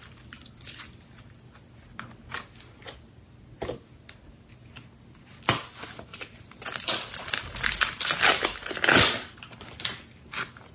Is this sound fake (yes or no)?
no